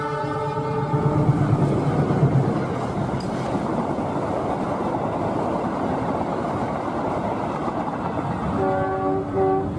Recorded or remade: recorded